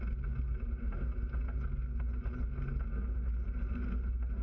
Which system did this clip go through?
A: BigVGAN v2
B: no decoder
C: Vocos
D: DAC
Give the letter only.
B